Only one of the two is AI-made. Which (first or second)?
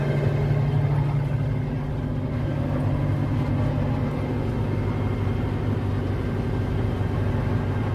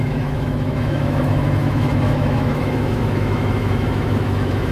second